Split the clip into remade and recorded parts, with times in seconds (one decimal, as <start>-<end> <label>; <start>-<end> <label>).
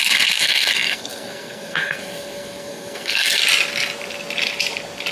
0.0-3.4 remade; 3.4-5.1 recorded